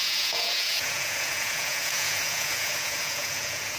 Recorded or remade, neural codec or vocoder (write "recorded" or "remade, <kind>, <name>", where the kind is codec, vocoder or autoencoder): remade, vocoder, Vocos